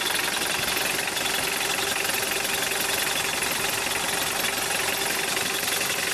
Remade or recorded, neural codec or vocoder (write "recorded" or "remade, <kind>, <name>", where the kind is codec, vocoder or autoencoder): recorded